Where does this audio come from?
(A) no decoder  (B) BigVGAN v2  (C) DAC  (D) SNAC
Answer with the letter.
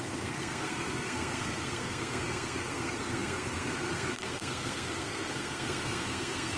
D